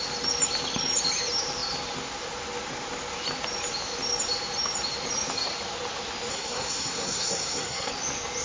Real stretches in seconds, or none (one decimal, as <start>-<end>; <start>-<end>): 0.0-6.3; 7.9-8.4